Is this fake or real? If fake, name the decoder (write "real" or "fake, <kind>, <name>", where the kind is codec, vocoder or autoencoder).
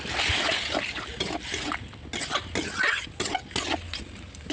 real